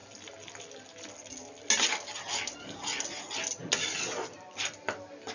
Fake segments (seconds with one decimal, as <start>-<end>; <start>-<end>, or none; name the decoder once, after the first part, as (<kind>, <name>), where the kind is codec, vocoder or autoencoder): none